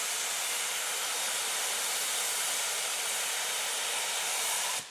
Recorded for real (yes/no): no